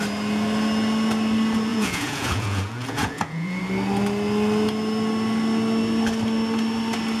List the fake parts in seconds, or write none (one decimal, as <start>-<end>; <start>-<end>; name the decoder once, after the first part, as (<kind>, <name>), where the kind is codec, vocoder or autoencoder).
1.7-3.6 (vocoder, Vocos)